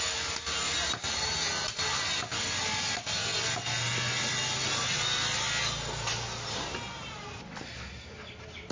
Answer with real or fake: real